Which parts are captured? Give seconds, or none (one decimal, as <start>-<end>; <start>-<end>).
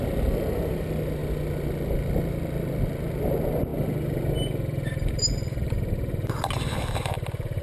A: 0.0-7.6